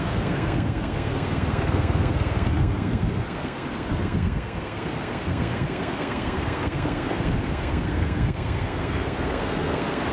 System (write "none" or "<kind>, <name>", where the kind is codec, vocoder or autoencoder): codec, SNAC